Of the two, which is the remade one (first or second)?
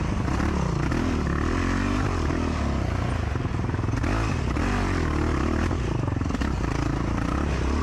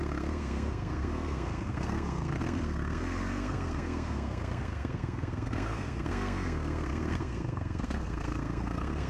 second